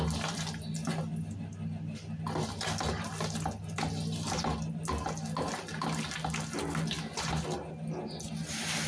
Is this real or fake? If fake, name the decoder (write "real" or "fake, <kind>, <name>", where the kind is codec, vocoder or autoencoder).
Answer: real